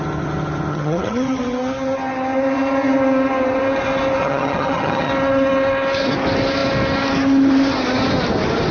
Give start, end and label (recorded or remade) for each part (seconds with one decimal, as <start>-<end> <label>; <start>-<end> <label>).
0.0-0.7 recorded; 0.7-1.4 remade; 1.4-4.2 recorded; 4.2-5.1 remade; 5.1-8.7 recorded